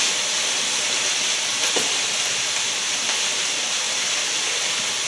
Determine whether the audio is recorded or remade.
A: recorded